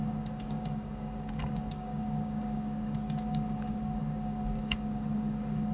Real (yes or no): no